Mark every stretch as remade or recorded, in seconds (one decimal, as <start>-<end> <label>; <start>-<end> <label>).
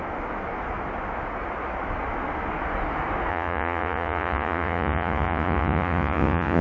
0.0-3.3 recorded; 3.3-6.6 remade